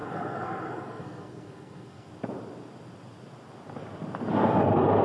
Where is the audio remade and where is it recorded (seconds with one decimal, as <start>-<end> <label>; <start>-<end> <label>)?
0.0-2.1 remade; 2.1-5.0 recorded